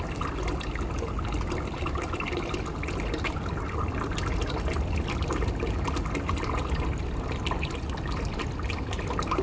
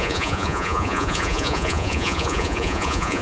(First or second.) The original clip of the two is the first